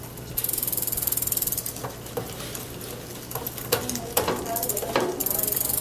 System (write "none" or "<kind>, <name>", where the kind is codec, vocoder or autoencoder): none